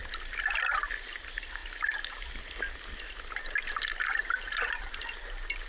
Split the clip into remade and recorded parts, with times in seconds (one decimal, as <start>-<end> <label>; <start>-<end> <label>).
0.0-5.7 recorded